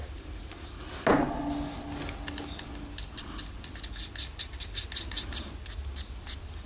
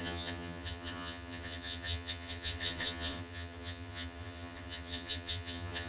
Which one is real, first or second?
first